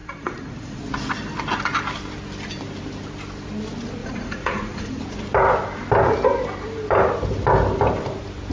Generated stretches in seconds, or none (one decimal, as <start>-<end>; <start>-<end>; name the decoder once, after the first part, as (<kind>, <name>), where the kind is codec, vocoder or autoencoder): 0.0-0.8 (vocoder, Vocos); 4.0-5.0